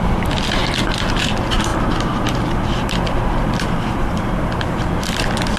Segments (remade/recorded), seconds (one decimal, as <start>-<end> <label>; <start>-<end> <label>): 0.0-0.6 remade; 0.6-1.1 recorded; 1.1-1.7 remade; 1.7-4.4 recorded; 4.4-5.6 remade